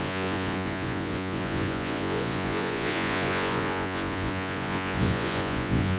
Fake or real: fake